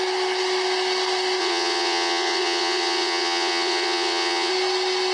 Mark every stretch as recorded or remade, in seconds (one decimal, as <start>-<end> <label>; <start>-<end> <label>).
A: 0.0-1.4 recorded; 1.4-4.5 remade; 4.5-5.1 recorded